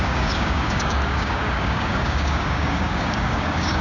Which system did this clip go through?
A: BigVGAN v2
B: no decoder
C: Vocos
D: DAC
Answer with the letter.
D